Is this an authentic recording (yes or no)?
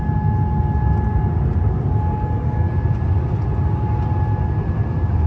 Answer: yes